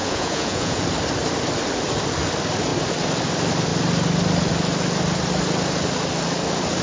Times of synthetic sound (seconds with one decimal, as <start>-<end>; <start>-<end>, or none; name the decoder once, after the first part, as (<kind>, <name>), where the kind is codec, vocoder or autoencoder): 0.0-0.8 (vocoder, Vocos)